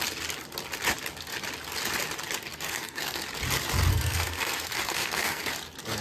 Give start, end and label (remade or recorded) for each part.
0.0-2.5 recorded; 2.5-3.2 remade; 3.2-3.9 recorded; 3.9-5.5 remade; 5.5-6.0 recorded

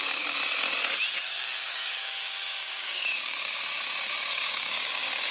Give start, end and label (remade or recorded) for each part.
0.0-1.6 recorded; 1.6-3.6 remade; 3.6-4.3 recorded; 4.3-5.3 remade

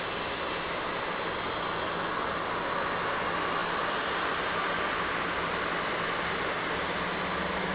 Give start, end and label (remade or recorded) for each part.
0.0-7.7 recorded

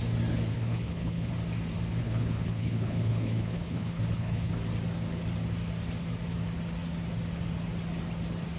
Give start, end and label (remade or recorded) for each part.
0.0-0.5 recorded; 0.5-1.3 remade; 1.3-2.0 recorded; 2.0-4.5 remade; 4.5-8.6 recorded

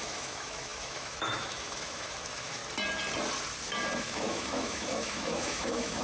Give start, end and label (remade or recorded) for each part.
0.0-2.6 remade; 2.6-4.0 recorded; 4.0-6.0 remade

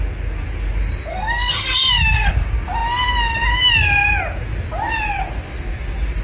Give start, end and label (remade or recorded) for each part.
0.0-1.1 recorded; 1.1-2.3 remade; 2.3-6.2 recorded

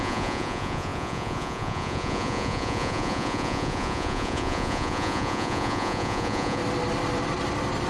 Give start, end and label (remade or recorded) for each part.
0.0-6.6 remade; 6.6-7.9 recorded

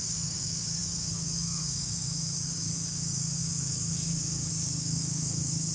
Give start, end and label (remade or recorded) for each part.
0.0-5.7 remade